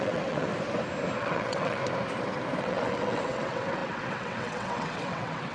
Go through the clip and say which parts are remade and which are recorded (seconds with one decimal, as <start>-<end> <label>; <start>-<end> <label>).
0.0-0.5 remade; 0.5-1.2 recorded; 1.2-1.8 remade; 1.8-2.6 recorded; 2.6-5.5 remade